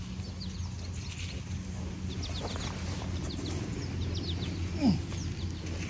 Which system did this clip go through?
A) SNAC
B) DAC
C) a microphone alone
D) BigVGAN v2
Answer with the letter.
C